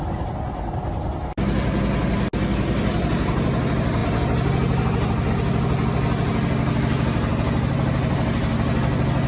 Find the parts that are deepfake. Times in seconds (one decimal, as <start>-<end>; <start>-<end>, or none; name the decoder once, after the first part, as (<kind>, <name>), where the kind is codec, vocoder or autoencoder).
none